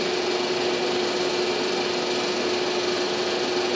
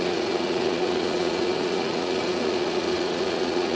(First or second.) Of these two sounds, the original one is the first